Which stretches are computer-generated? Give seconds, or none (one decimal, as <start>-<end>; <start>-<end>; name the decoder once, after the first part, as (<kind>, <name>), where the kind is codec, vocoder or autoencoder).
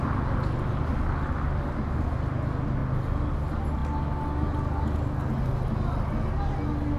none